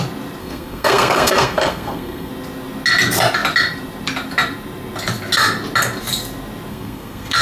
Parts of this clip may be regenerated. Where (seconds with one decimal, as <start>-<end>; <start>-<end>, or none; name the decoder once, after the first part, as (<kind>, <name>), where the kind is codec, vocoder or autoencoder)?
0.4-2.3 (codec, SNAC); 6.7-7.4